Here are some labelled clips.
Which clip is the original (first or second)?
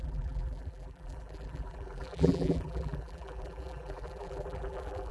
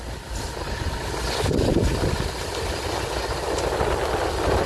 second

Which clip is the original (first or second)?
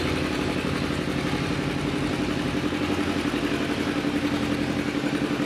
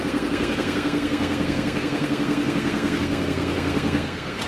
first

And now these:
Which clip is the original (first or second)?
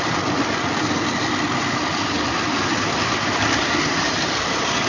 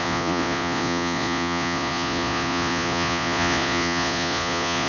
first